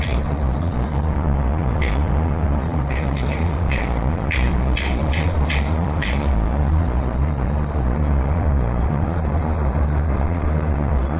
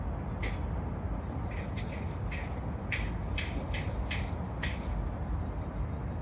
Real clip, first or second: second